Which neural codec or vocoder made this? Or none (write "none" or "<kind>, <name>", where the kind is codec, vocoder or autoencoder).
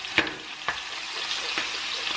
none